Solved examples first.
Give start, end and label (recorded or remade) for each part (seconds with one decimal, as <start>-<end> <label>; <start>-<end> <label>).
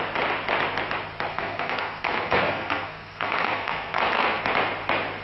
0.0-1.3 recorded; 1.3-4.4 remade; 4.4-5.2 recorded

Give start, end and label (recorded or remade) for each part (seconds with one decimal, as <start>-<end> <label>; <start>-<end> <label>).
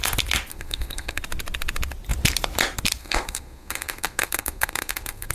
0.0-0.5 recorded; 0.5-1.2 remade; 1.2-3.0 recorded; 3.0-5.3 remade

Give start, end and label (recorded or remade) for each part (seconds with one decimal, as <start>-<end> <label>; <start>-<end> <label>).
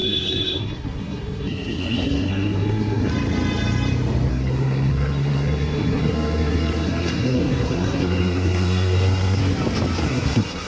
0.0-3.1 remade; 3.1-4.3 recorded; 4.3-9.4 remade; 9.4-10.0 recorded; 10.0-10.7 remade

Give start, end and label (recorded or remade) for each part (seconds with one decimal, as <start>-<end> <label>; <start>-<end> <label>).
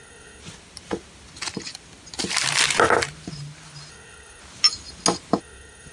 0.0-0.4 remade; 0.4-3.9 recorded; 3.9-4.4 remade; 4.4-5.4 recorded; 5.4-5.9 remade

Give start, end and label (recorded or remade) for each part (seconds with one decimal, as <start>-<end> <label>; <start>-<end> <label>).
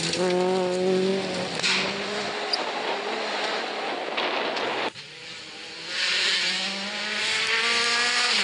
0.0-8.4 recorded